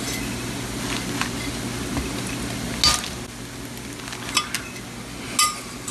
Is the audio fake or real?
real